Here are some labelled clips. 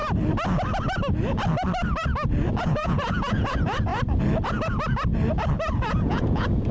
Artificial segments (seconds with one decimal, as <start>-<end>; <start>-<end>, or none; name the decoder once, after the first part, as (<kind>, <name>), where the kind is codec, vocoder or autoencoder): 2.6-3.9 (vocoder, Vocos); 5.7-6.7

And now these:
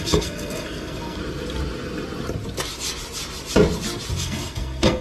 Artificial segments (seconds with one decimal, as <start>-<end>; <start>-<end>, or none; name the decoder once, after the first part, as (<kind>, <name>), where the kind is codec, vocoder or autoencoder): 0.0-1.2 (codec, SNAC); 4.2-5.0

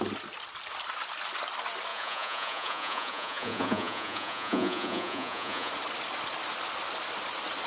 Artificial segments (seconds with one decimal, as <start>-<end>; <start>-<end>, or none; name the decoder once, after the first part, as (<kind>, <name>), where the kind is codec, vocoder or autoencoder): 1.9-5.7 (vocoder, Vocos)

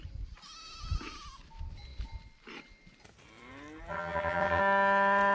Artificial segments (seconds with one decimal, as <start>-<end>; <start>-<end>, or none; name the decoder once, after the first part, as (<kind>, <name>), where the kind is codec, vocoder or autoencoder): 3.9-4.6 (vocoder, HiFi-GAN)